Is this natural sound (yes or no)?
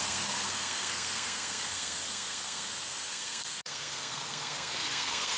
no